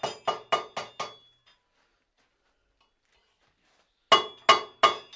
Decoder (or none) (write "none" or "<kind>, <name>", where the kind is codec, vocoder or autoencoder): none